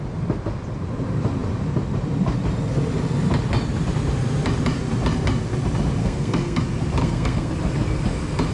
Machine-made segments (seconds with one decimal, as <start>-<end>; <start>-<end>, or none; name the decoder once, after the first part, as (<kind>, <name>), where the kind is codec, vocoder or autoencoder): 6.0-6.6 (codec, SNAC); 7.0-7.5

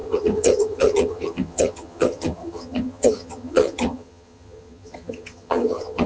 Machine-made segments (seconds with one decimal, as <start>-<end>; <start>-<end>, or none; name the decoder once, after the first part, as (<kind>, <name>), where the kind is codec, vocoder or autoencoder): 0.0-6.1 (vocoder, HiFi-GAN)

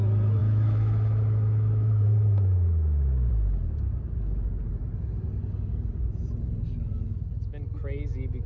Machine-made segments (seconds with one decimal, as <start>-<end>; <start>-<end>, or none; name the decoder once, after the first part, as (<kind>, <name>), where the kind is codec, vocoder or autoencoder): 0.4-3.3 (autoencoder, DAC-VAE)